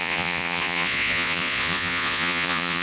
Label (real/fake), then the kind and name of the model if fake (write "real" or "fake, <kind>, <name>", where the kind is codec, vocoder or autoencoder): fake, vocoder, Vocos